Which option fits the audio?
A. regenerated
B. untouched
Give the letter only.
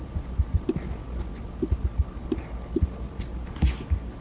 B